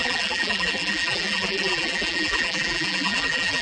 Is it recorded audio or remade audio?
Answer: remade